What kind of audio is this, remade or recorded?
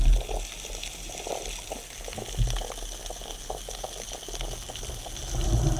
recorded